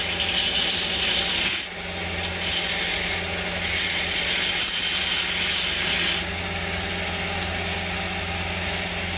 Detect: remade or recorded recorded